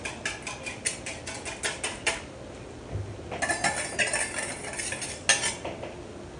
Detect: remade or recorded recorded